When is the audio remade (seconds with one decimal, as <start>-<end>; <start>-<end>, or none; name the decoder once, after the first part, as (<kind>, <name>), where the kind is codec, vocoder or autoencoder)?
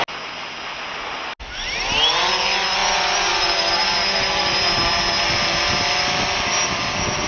none